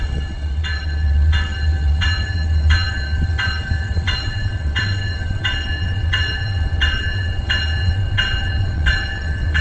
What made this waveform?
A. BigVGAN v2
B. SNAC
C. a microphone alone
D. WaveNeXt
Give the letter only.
D